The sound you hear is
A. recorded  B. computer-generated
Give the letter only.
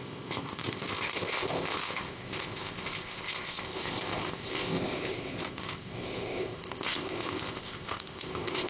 B